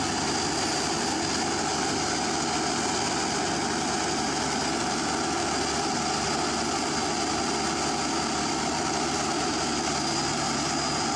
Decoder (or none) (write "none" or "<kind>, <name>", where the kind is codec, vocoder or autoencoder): none